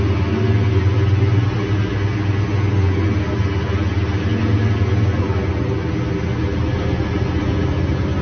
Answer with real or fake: real